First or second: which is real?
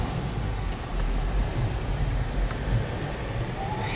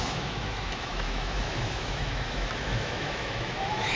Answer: first